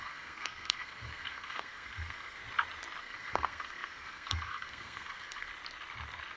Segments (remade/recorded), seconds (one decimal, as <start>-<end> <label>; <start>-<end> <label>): 0.0-2.4 remade; 2.4-3.0 recorded; 3.0-5.5 remade; 5.5-6.4 recorded